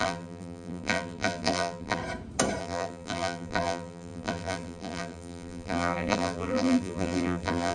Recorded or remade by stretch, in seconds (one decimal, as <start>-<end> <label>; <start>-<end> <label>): 0.0-2.0 remade; 2.0-2.6 recorded; 2.6-7.7 remade